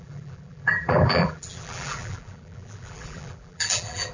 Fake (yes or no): yes